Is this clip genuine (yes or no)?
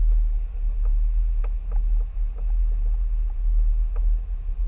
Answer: yes